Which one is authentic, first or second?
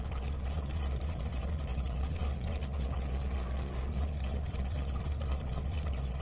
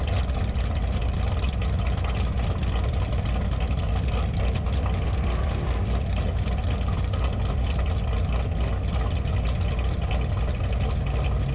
second